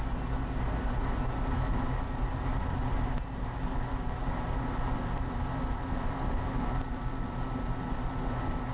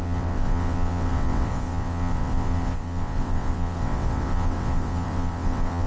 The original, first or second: first